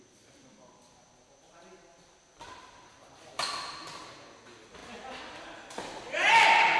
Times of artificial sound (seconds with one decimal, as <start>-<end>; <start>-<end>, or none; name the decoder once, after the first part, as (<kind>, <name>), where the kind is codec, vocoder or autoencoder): none